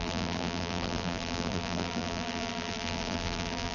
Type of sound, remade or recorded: remade